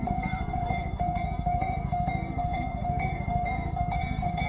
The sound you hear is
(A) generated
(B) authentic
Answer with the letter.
A